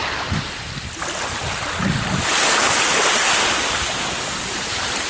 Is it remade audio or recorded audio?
recorded